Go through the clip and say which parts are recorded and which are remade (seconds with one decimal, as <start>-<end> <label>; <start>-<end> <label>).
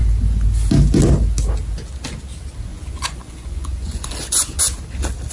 0.0-2.7 recorded; 2.7-4.6 remade; 4.6-5.3 recorded